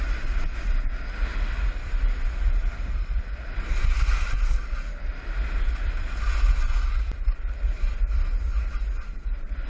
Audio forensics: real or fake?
real